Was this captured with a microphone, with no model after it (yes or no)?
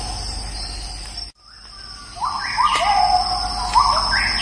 yes